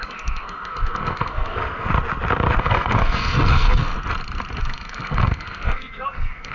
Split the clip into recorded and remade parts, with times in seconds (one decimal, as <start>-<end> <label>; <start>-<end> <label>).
0.0-1.9 remade; 1.9-2.6 recorded; 2.6-3.9 remade; 3.9-4.6 recorded; 4.6-6.5 remade